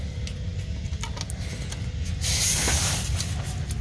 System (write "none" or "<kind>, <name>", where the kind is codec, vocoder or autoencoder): none